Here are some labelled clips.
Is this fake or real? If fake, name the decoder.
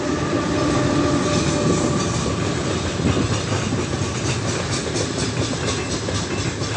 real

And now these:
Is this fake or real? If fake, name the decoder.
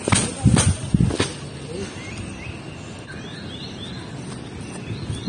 real